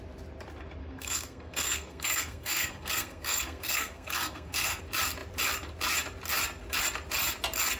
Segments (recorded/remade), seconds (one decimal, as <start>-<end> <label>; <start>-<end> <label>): 0.0-0.8 recorded; 0.8-4.8 remade; 4.8-7.8 recorded